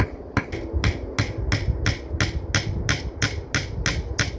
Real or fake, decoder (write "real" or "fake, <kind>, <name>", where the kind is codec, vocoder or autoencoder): real